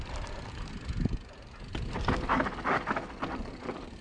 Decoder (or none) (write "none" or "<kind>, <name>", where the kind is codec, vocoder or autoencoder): vocoder, BigVGAN v2